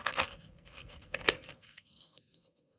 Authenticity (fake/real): fake